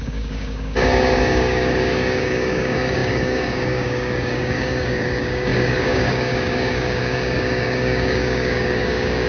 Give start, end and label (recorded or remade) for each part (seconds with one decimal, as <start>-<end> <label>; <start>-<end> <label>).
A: 0.0-9.3 remade